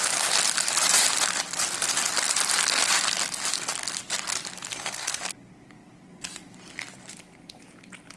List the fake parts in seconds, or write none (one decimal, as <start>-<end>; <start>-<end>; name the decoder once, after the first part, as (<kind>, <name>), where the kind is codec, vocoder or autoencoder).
4.7-5.2 (codec, SNAC)